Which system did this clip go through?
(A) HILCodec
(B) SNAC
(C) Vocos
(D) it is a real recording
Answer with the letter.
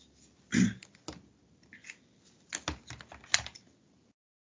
D